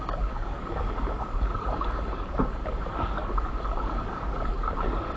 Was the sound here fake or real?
fake